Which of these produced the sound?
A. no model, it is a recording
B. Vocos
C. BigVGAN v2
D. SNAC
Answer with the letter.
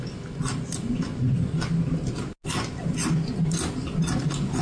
A